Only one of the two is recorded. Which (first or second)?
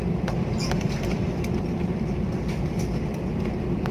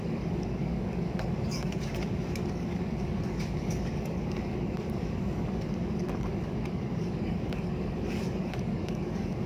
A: first